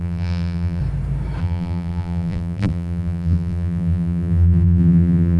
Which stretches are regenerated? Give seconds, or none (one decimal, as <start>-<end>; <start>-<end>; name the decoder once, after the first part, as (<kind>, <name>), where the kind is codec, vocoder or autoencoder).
0.0-0.8 (vocoder, BigVGAN v2); 1.4-5.4